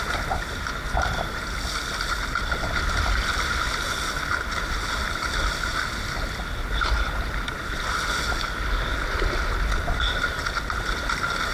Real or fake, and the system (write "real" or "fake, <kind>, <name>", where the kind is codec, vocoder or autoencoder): real